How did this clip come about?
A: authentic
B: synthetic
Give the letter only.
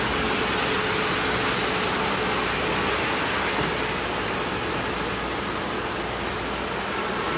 A